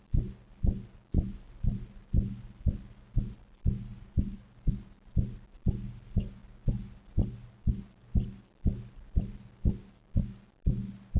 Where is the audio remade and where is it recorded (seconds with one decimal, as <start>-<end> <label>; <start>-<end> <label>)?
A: 0.0-11.2 recorded